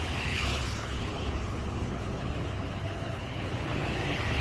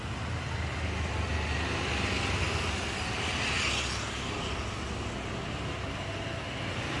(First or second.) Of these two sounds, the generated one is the first